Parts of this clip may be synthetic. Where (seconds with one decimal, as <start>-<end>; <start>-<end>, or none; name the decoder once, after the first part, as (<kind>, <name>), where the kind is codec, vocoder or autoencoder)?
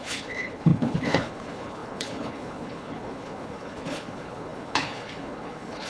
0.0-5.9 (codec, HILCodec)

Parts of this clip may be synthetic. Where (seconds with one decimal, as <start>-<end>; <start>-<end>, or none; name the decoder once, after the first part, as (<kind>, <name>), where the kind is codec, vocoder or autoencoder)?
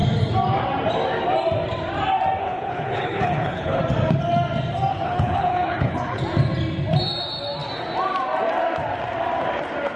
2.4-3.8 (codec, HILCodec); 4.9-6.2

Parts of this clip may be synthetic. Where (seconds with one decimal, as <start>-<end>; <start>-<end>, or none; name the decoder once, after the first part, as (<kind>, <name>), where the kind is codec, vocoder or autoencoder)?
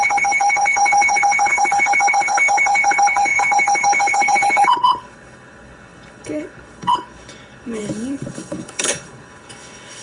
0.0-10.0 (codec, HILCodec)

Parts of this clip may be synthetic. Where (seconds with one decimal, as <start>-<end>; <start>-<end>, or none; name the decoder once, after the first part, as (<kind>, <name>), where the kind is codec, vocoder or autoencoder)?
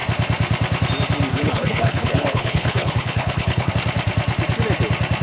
1.3-3.7 (codec, HILCodec)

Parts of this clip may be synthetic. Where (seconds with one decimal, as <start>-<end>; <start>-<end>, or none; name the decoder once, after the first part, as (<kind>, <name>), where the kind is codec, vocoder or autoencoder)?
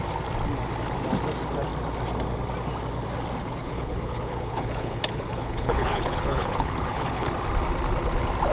3.4-7.3 (codec, HILCodec)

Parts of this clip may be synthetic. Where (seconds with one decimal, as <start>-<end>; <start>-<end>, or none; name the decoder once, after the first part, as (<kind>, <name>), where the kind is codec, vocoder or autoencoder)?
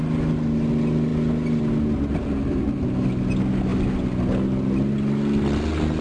none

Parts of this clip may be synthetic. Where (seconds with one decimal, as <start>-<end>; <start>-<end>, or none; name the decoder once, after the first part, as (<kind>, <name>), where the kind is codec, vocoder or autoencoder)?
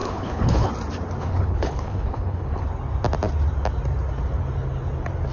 0.0-0.7 (codec, HILCodec); 1.2-2.6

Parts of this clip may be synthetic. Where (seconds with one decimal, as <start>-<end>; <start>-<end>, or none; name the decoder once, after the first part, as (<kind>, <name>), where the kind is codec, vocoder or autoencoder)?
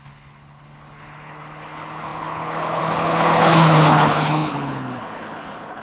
0.0-5.8 (codec, HILCodec)